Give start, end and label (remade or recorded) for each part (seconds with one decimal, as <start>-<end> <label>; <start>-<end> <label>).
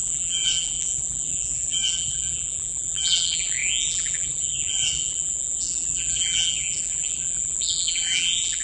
0.0-8.6 remade